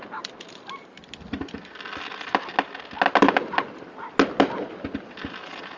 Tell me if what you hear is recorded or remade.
recorded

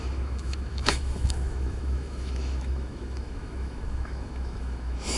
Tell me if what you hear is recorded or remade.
remade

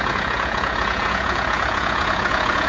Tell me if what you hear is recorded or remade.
remade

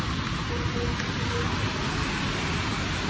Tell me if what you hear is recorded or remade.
recorded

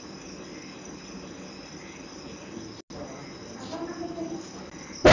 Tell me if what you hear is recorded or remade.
recorded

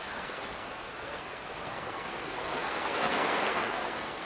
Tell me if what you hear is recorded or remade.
remade